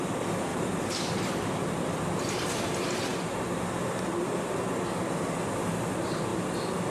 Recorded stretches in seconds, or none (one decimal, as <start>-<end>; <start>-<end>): 0.0-0.5; 2.2-3.1; 4.6-6.9